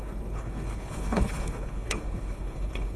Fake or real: fake